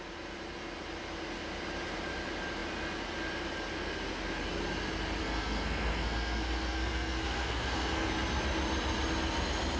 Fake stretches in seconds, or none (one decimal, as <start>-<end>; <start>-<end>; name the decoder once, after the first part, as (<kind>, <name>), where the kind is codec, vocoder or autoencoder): 5.2-8.1 (codec, SNAC)